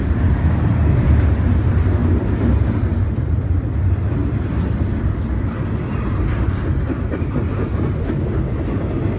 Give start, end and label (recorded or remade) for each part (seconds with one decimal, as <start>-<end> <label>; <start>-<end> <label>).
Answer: 0.0-9.2 recorded